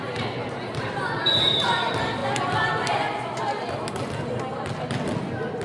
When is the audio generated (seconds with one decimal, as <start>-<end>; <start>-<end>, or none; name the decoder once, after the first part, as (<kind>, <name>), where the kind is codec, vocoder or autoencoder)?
0.0-2.2 (vocoder, BigVGAN v2)